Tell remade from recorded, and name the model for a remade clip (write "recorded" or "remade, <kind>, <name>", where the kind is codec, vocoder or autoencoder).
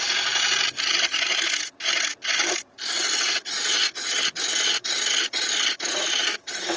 recorded